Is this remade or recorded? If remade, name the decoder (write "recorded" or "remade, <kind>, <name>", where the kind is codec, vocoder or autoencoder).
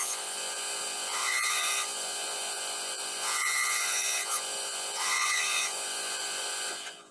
remade, vocoder, Vocos